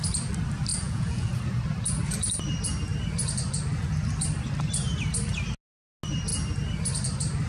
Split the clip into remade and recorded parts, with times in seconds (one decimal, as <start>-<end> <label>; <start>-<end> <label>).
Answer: 0.0-0.7 recorded; 0.7-1.3 remade; 1.3-7.5 recorded